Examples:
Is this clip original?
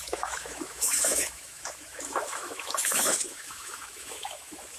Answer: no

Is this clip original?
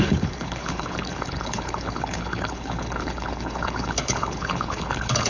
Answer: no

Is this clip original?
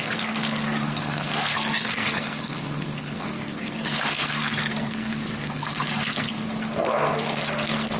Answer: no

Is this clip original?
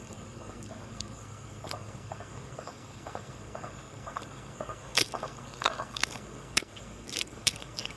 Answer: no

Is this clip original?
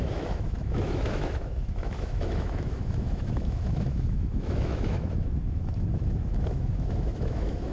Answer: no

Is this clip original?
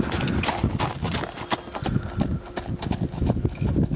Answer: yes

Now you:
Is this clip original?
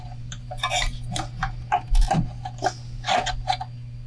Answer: yes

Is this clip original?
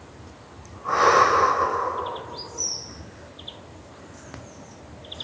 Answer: yes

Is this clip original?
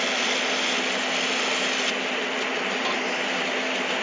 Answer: yes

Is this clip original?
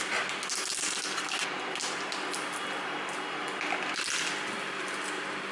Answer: yes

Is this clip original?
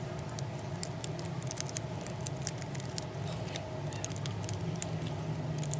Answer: yes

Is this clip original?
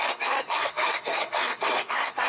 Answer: no